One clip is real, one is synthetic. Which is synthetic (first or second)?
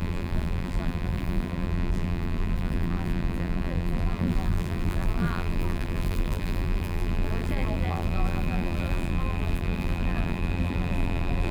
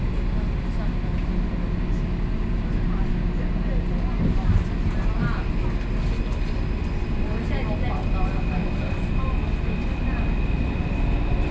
first